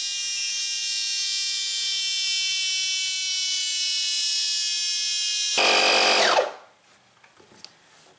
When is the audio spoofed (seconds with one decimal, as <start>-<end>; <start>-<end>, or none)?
none